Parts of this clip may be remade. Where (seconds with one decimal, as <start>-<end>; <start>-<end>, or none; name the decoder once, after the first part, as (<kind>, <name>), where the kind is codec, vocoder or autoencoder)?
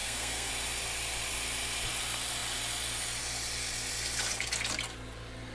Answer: 0.0-0.5 (codec, SNAC)